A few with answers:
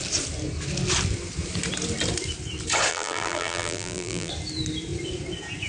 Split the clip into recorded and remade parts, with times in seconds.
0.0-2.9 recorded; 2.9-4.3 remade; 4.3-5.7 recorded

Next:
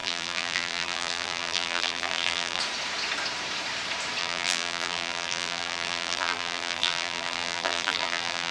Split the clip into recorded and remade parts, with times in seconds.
0.0-2.6 remade; 2.6-4.2 recorded; 4.2-8.5 remade

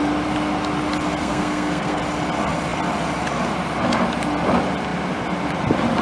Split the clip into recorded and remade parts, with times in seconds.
0.0-1.2 recorded; 1.2-2.0 remade; 2.0-6.0 recorded

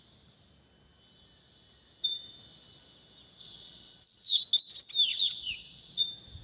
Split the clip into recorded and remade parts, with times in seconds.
0.0-3.4 recorded; 3.4-4.4 remade; 4.4-5.1 recorded; 5.1-6.0 remade; 6.0-6.4 recorded

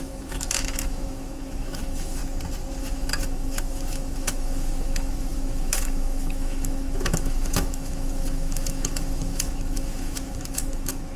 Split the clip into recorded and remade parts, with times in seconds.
0.0-2.2 remade; 2.2-2.8 recorded; 2.8-11.2 remade